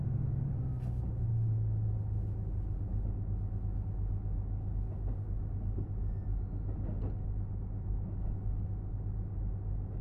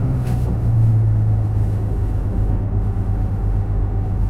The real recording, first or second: first